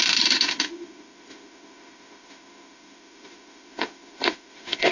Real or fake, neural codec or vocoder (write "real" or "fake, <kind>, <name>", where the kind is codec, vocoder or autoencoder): fake, autoencoder, DAC-VAE